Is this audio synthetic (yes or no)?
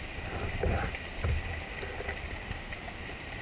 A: no